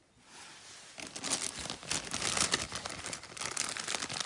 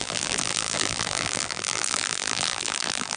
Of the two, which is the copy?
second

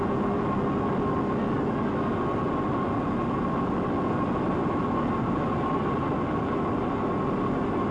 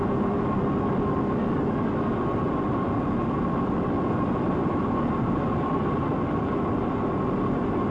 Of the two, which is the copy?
second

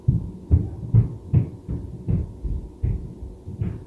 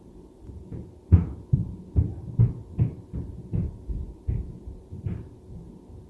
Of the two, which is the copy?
second